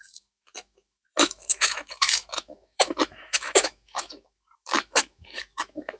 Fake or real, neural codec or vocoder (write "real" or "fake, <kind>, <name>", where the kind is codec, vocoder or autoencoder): fake, autoencoder, DAC-VAE